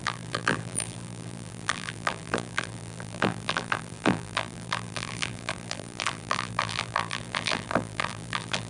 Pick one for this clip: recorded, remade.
remade